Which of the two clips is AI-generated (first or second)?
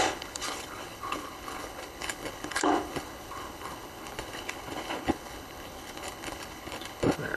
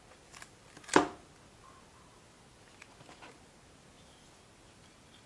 first